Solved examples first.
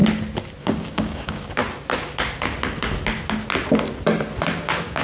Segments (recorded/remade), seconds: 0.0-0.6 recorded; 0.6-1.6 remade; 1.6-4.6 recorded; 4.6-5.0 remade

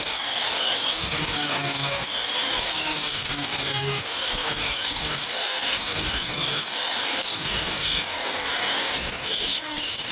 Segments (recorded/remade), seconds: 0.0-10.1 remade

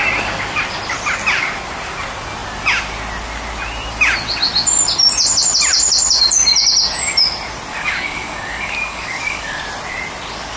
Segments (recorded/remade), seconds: 0.0-7.7 recorded; 7.7-9.6 remade; 9.6-10.6 recorded

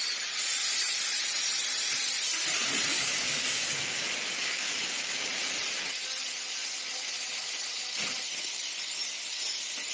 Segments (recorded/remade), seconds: 0.0-2.9 recorded; 2.9-5.3 remade; 5.3-9.9 recorded

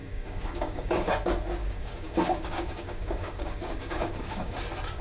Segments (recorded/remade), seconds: 0.0-1.1 remade; 1.1-1.6 recorded; 1.6-4.6 remade; 4.6-5.0 recorded

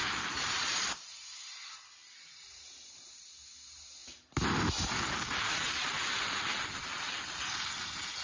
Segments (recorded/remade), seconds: 0.0-8.2 recorded

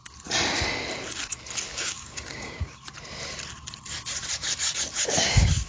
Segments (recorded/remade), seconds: 0.0-1.7 recorded; 1.7-2.8 remade; 2.8-4.9 recorded; 4.9-5.7 remade

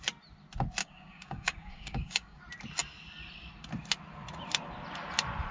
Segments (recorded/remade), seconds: 0.0-0.8 recorded; 0.8-2.4 remade; 2.4-5.5 recorded